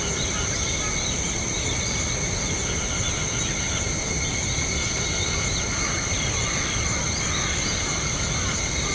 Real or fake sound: real